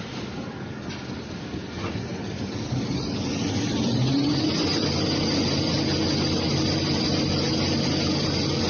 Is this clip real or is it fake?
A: real